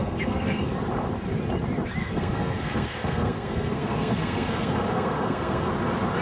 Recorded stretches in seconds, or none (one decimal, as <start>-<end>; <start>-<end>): 0.7-2.0; 5.7-6.2